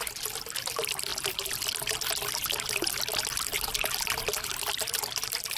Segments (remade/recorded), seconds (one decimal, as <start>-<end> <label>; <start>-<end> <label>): 0.0-1.1 remade; 1.1-4.3 recorded; 4.3-5.6 remade